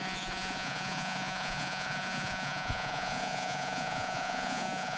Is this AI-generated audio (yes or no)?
yes